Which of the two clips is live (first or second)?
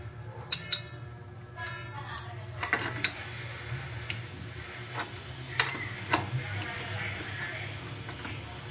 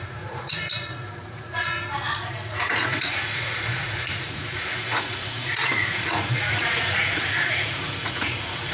first